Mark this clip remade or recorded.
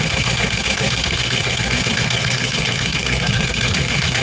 remade